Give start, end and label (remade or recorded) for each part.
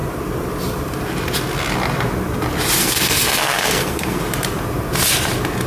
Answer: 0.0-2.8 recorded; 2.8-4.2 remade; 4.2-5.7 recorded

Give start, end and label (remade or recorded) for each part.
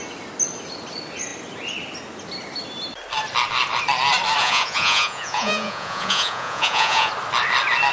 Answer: 0.0-4.4 recorded; 4.4-7.1 remade; 7.1-7.9 recorded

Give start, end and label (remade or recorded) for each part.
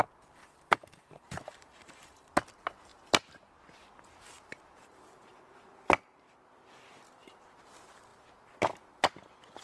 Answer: 0.0-0.4 recorded; 0.4-2.3 remade; 2.3-9.6 recorded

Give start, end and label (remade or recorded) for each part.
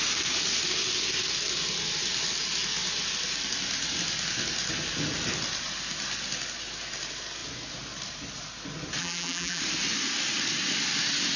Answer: 0.0-9.0 recorded; 9.0-9.6 remade; 9.6-11.4 recorded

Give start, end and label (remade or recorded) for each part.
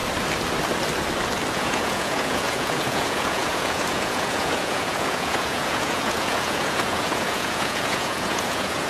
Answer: 0.0-1.5 recorded; 1.5-8.9 remade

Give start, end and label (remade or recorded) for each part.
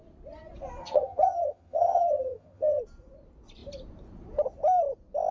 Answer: 0.0-0.8 recorded; 0.8-2.8 remade; 2.8-5.3 recorded